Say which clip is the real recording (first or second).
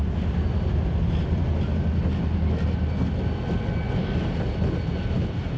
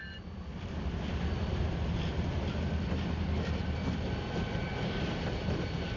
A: first